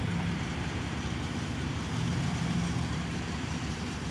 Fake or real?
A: fake